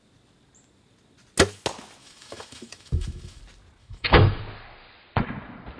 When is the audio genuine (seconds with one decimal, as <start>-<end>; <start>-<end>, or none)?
0.0-2.0; 3.4-3.8; 4.4-5.8